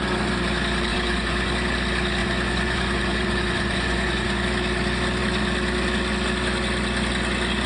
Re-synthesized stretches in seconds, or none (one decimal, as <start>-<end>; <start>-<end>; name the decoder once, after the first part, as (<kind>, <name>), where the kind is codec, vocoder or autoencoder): 0.9-1.5 (vocoder, Vocos); 2.2-4.4